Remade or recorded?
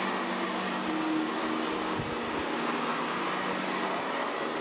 recorded